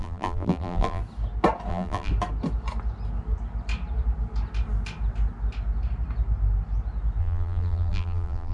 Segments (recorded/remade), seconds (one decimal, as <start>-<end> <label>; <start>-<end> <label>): 0.0-1.0 remade; 1.0-1.7 recorded; 1.7-2.1 remade; 2.1-7.2 recorded; 7.2-8.5 remade